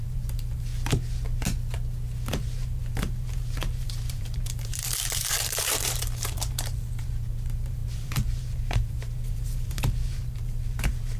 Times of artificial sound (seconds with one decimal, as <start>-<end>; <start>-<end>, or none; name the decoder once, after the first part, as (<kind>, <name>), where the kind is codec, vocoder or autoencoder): 0.0-0.7 (vocoder, BigVGAN v2); 2.4-11.2